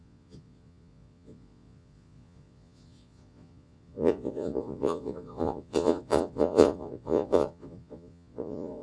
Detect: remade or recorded remade